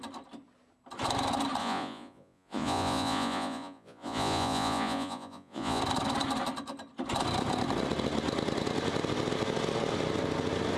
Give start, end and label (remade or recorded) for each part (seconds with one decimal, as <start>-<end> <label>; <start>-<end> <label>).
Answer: 0.0-1.6 recorded; 1.6-5.8 remade; 5.8-10.8 recorded